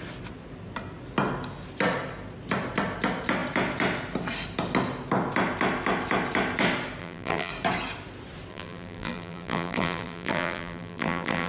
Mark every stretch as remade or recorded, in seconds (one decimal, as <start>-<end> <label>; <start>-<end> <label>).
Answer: 0.0-7.0 recorded; 7.0-7.5 remade; 7.5-8.5 recorded; 8.5-11.5 remade

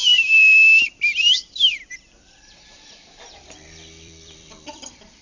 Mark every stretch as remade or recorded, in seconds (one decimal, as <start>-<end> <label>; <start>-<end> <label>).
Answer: 0.0-5.2 remade

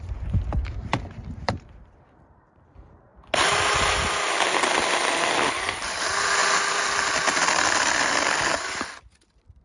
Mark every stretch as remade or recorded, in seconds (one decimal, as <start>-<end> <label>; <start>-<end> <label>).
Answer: 0.0-3.1 remade; 3.1-4.6 recorded; 4.6-9.6 remade

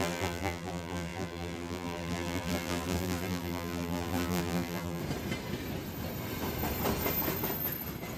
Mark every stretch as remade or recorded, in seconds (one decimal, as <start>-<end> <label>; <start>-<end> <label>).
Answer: 0.0-5.0 remade; 5.0-8.2 recorded

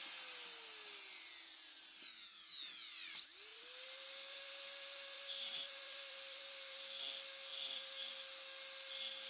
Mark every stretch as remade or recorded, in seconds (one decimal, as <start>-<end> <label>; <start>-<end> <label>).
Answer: 0.0-3.5 recorded; 3.5-7.0 remade; 7.0-7.5 recorded; 7.5-8.1 remade; 8.1-9.3 recorded

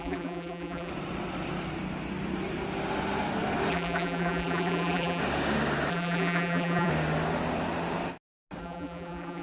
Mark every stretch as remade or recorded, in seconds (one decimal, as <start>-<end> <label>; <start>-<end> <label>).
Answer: 0.0-0.9 remade; 0.9-3.7 recorded; 3.7-5.2 remade; 5.2-5.9 recorded; 5.9-6.9 remade; 6.9-8.6 recorded; 8.6-9.4 remade

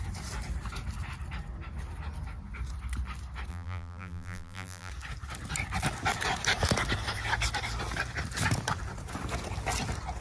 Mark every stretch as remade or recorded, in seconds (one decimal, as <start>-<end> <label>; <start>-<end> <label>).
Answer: 0.0-3.5 recorded; 3.5-4.9 remade; 4.9-10.2 recorded